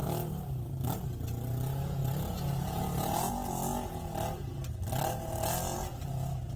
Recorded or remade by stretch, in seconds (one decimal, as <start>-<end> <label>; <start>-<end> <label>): 0.0-2.0 recorded; 2.0-3.3 remade; 3.3-6.6 recorded